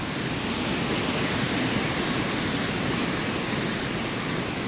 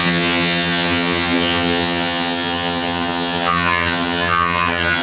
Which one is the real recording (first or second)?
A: first